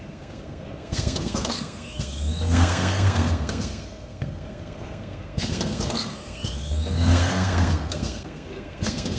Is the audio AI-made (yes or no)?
yes